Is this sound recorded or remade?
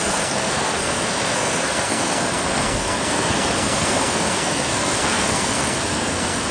remade